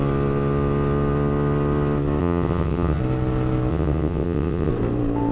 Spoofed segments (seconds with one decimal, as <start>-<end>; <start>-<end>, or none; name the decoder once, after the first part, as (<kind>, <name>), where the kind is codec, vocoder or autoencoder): 2.2-3.0 (vocoder, WaveNeXt); 3.7-4.7